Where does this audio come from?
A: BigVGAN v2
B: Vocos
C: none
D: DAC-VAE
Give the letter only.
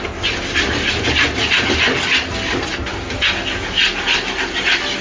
C